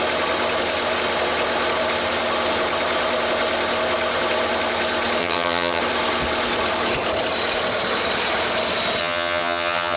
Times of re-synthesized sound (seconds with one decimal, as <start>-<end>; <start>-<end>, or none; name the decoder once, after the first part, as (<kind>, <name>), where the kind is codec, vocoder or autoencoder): 5.2-5.8 (vocoder, HiFi-GAN); 9.0-10.0